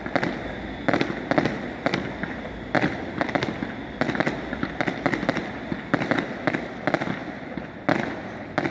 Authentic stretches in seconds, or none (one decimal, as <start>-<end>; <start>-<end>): 0.0-8.7